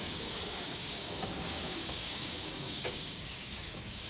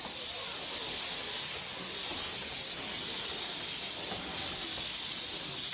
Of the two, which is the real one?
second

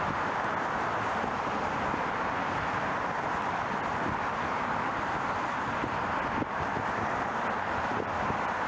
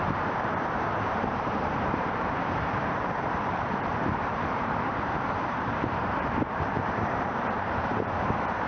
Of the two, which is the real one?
first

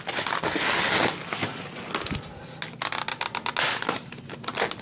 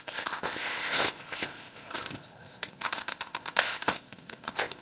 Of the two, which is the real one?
first